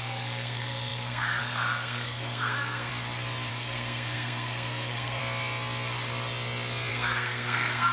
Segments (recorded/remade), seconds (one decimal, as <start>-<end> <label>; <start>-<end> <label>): 0.0-2.9 remade; 2.9-3.5 recorded; 3.5-5.2 remade; 5.2-6.9 recorded; 6.9-7.9 remade

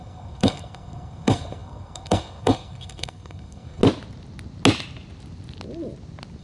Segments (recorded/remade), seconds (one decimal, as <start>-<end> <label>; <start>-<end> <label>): 0.0-3.8 remade; 3.8-6.4 recorded

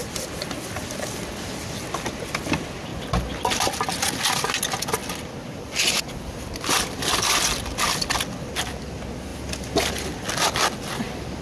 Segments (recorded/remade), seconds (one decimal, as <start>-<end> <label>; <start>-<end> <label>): 0.0-11.4 recorded